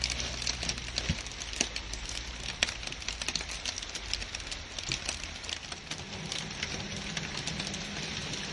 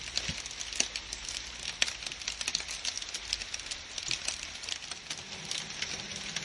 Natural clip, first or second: second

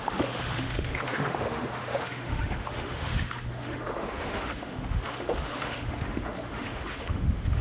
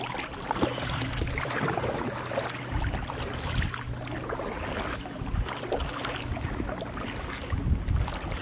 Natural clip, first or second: second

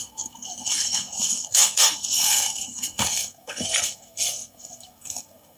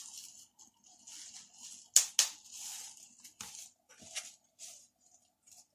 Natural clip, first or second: second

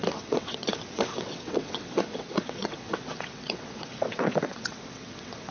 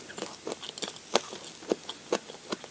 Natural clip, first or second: second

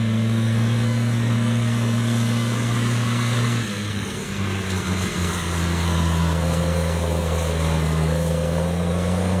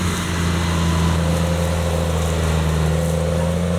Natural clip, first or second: second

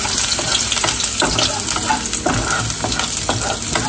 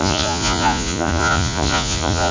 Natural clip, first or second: first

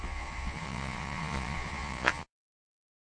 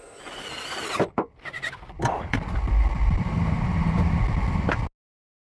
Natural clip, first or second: second